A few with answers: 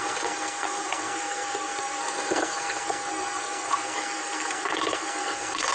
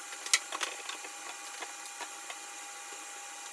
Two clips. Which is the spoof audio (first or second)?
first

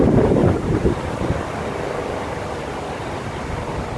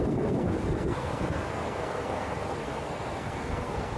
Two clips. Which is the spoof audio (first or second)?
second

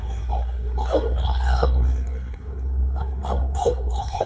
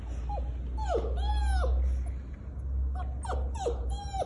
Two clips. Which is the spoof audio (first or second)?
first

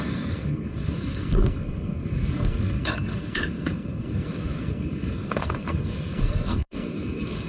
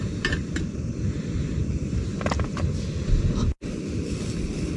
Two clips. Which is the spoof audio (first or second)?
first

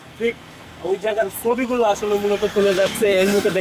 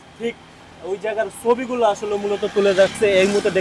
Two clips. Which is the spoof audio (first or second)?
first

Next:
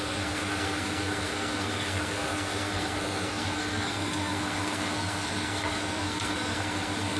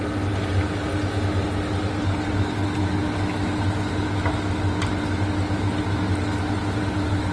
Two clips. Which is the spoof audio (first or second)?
first